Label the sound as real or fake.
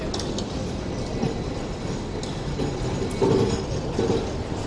real